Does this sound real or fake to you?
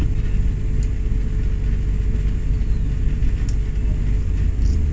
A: real